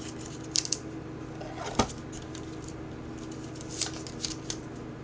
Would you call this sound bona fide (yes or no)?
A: yes